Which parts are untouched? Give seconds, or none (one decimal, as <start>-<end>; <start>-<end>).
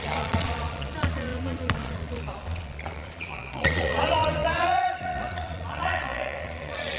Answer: none